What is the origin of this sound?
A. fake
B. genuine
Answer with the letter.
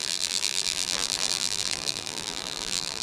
A